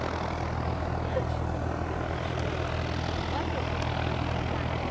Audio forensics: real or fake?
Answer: real